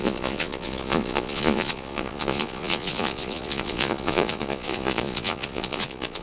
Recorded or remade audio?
remade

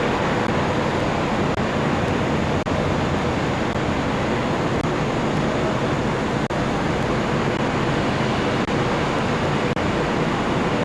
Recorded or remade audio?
recorded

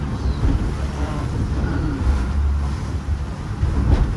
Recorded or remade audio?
recorded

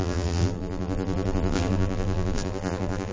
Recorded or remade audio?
remade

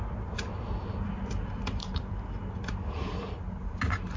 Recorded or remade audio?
remade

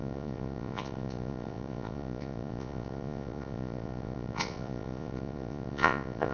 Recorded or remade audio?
remade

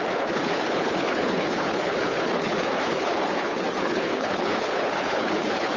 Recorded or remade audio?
remade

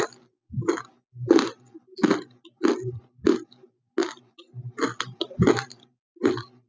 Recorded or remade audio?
recorded